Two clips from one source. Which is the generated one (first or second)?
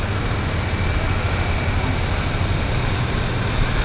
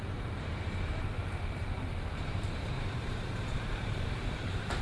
second